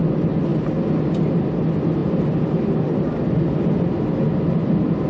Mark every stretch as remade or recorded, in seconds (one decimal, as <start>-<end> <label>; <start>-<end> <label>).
0.0-2.0 recorded; 2.0-3.2 remade; 3.2-5.1 recorded